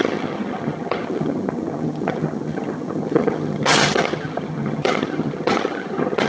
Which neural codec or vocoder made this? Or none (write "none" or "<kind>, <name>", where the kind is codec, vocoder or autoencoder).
vocoder, HiFi-GAN